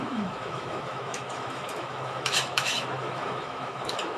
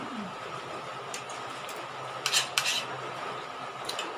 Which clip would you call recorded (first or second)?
second